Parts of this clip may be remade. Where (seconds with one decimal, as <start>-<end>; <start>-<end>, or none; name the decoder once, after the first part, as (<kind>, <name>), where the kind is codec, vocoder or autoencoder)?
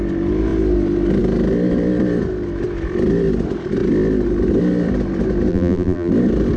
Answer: 5.5-6.1 (vocoder, BigVGAN v2)